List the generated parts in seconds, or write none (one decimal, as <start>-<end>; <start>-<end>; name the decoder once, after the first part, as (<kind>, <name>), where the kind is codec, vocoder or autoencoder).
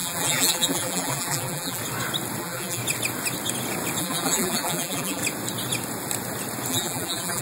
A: 0.0-1.8 (vocoder, BigVGAN v2); 2.4-2.8; 4.0-5.2; 6.7-7.4